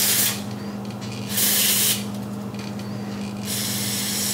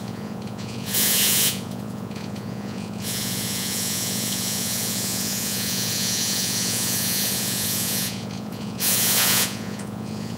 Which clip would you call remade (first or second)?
second